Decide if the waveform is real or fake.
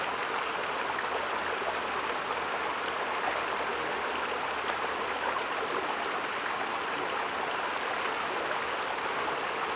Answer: real